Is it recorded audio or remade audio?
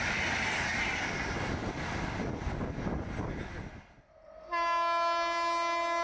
recorded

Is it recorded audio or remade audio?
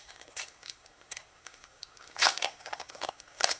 remade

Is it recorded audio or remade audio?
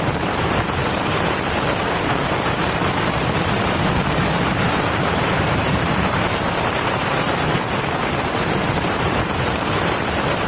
remade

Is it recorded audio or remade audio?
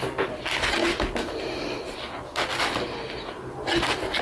recorded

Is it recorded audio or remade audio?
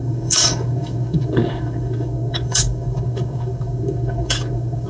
remade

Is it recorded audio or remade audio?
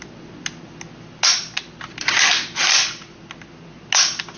recorded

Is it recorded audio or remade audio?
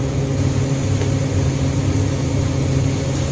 recorded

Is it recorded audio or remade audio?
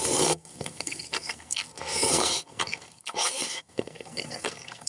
remade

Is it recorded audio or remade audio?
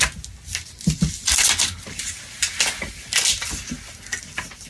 recorded